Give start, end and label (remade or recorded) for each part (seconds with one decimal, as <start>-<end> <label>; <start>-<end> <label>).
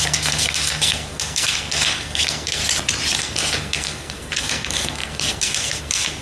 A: 0.0-2.6 remade; 2.6-3.2 recorded; 3.2-6.2 remade